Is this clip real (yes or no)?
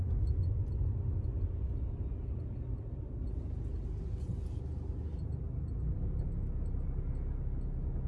yes